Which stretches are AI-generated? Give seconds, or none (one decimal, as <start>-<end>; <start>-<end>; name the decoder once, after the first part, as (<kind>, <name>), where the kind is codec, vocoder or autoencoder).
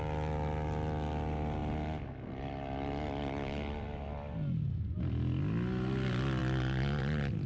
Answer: none